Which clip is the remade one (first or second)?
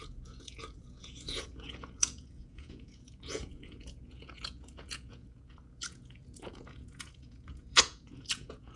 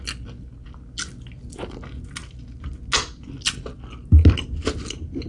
first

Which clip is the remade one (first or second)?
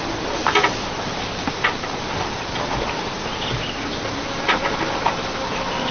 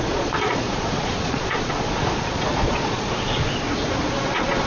second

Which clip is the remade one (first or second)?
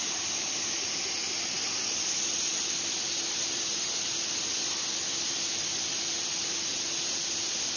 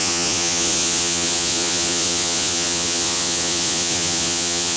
second